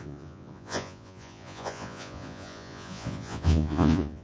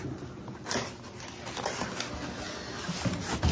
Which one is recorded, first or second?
second